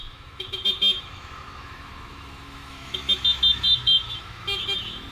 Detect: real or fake fake